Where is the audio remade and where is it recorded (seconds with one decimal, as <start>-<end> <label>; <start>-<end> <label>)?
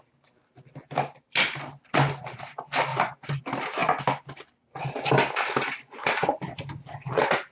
0.0-2.9 recorded; 2.9-3.4 remade; 3.4-7.5 recorded